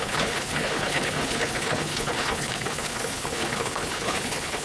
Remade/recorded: remade